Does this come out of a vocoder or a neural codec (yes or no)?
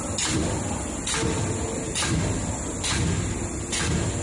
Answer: no